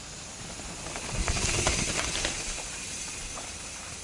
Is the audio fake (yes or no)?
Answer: no